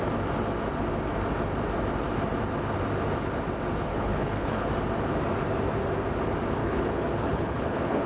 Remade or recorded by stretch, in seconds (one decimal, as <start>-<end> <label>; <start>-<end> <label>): 0.0-3.9 recorded; 3.9-4.7 remade; 4.7-6.6 recorded; 6.6-8.1 remade